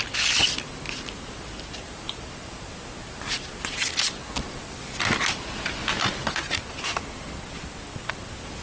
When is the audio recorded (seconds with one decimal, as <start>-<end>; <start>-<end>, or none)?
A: 0.0-1.8; 2.7-8.6